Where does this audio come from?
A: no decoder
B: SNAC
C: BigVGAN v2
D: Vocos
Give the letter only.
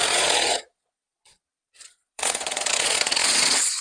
D